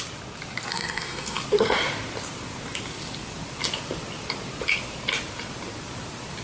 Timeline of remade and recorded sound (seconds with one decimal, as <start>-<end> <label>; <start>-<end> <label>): 0.0-0.7 recorded; 0.7-1.4 remade; 1.4-6.4 recorded